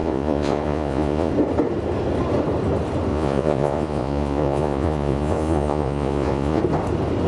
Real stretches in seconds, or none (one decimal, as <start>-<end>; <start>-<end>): 1.3-3.1; 6.6-7.3